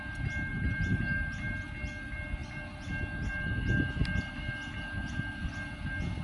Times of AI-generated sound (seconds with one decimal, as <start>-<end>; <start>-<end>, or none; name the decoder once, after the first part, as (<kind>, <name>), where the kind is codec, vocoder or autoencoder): 0.5-1.6 (vocoder, BigVGAN v2)